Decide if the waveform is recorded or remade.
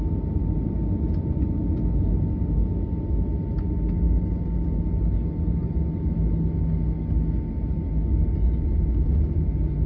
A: recorded